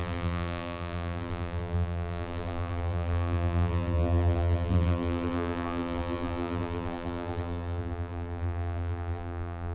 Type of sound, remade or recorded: remade